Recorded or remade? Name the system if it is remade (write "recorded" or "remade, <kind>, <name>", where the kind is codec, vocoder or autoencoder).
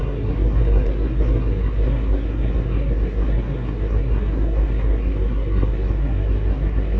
remade, codec, SNAC